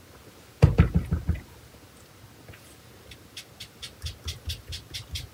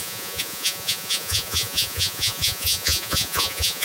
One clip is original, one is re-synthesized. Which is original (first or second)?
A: first